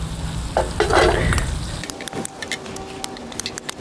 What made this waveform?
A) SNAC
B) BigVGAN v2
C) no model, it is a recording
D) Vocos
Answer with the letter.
C